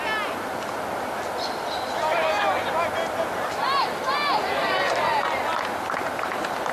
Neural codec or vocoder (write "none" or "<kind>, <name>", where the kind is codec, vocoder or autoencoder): none